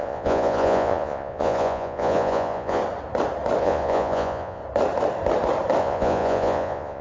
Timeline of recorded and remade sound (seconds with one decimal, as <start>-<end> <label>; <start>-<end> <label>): 0.0-2.8 remade; 2.8-3.6 recorded; 3.6-4.6 remade; 4.6-5.8 recorded; 5.8-7.0 remade